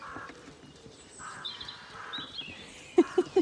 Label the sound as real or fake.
fake